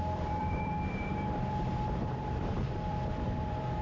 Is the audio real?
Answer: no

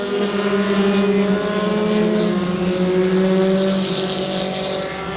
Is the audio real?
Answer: yes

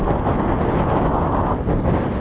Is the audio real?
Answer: yes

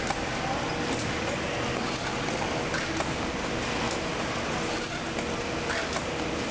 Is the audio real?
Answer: yes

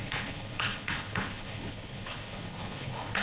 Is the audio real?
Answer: no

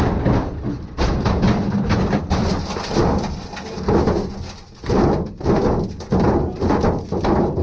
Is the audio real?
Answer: yes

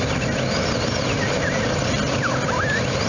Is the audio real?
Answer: yes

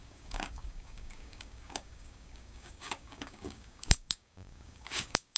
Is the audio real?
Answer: no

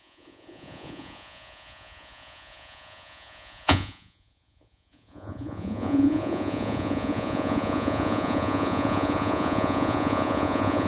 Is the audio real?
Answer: no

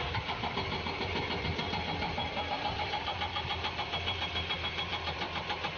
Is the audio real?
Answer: no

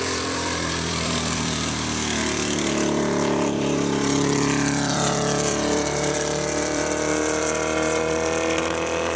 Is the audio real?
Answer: no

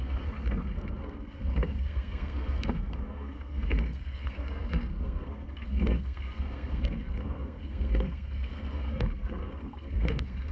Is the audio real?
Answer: no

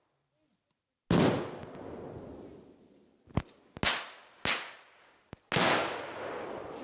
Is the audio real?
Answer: yes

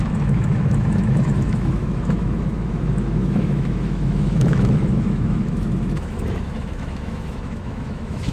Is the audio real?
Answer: no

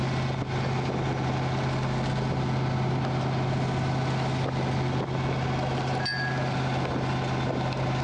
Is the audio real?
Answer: yes